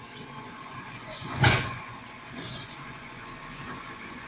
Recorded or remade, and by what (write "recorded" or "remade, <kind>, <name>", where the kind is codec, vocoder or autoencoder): remade, vocoder, Vocos